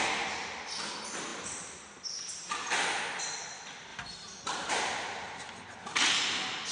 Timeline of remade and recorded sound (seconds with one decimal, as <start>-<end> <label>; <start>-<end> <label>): 0.0-6.7 recorded

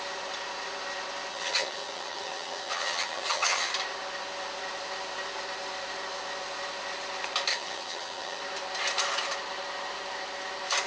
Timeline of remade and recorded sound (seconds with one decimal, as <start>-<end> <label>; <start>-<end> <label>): 0.0-1.3 recorded; 1.3-3.7 remade; 3.7-7.5 recorded; 7.5-8.4 remade; 8.4-10.9 recorded

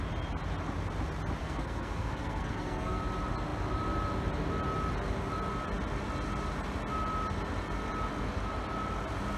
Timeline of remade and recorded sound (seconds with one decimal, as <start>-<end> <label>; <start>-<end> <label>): 0.0-1.4 recorded; 1.4-3.0 remade; 3.0-9.4 recorded

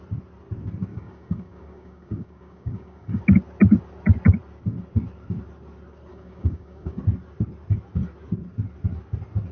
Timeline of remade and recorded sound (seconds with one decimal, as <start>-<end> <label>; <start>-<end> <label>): 0.0-0.9 recorded; 0.9-3.2 remade; 3.2-6.1 recorded; 6.1-7.0 remade; 7.0-9.5 recorded